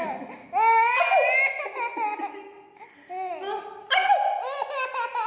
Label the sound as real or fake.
real